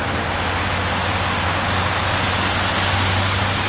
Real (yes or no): yes